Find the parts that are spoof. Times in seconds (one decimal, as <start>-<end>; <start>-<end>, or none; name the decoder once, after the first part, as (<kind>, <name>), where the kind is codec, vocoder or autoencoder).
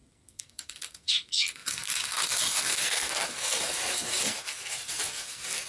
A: 0.0-5.7 (codec, SNAC)